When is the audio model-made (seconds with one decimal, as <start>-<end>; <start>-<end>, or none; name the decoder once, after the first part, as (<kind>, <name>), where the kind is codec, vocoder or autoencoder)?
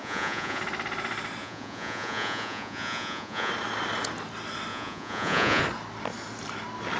0.0-0.6 (vocoder, Vocos); 1.4-3.5; 4.7-5.6